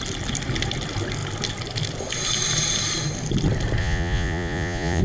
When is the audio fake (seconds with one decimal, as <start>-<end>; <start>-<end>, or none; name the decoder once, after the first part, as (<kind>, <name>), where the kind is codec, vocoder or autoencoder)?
3.8-5.0 (vocoder, Vocos)